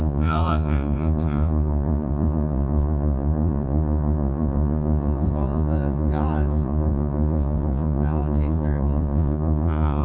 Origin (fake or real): fake